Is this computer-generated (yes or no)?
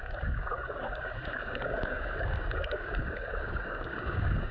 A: yes